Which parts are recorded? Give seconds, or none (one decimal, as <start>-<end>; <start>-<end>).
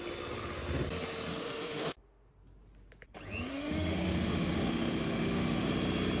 0.0-1.4; 2.3-3.5; 5.7-6.2